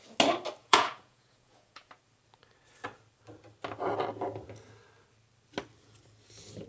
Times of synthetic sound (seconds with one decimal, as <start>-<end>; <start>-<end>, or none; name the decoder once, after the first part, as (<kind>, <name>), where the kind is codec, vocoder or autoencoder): 0.6-1.9 (vocoder, Vocos)